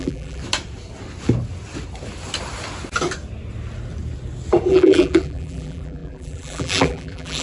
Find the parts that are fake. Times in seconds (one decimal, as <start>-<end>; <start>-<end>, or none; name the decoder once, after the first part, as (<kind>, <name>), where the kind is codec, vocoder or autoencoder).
0.0-0.4 (vocoder, BigVGAN v2); 4.7-7.4